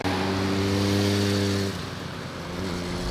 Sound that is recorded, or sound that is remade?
recorded